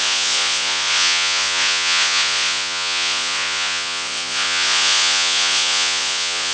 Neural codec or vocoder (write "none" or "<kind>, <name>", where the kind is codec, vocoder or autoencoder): vocoder, Vocos